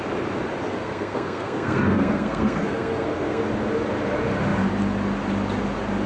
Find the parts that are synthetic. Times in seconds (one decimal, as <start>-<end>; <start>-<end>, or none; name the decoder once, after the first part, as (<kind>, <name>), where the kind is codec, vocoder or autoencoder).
0.7-3.4 (codec, SNAC)